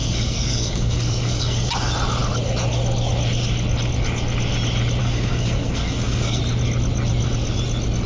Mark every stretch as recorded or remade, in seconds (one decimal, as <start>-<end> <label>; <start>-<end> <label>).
0.0-1.7 remade; 1.7-5.0 recorded; 5.0-6.4 remade; 6.4-8.1 recorded